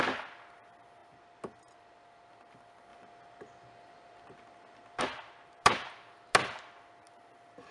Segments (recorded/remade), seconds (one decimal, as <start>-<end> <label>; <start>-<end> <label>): 0.0-7.7 recorded